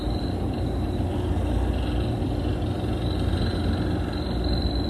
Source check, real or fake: real